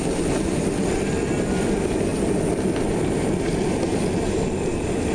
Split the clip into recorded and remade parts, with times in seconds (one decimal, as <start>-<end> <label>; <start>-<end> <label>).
0.0-5.1 recorded